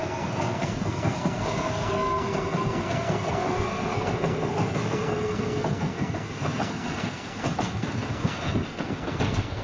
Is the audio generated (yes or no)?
yes